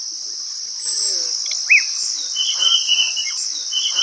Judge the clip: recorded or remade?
recorded